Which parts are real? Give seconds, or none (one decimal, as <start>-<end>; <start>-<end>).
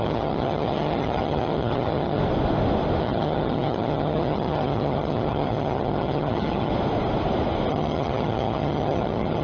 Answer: 2.2-3.0; 6.7-7.7